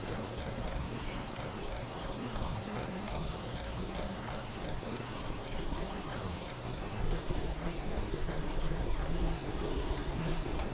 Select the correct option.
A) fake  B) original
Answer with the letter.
A